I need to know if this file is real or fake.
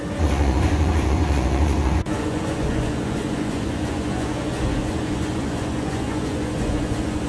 fake